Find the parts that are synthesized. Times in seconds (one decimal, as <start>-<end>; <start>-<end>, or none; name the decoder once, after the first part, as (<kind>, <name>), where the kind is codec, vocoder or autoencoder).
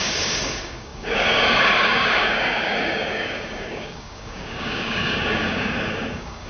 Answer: 0.0-6.5 (codec, DAC)